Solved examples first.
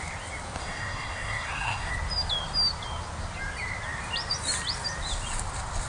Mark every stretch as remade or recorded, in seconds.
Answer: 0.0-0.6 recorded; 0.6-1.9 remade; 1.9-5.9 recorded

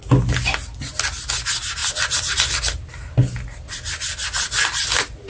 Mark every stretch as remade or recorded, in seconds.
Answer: 0.0-5.3 recorded